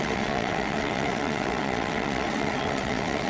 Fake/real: fake